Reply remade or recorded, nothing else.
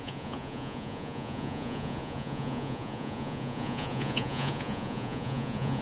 remade